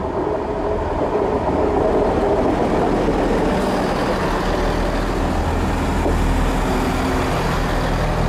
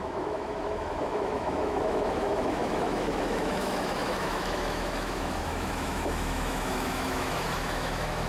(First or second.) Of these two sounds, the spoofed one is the second